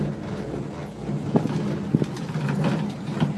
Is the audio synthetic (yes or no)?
no